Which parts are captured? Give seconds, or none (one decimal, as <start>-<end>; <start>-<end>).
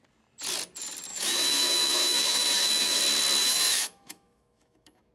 0.0-1.1; 3.0-3.4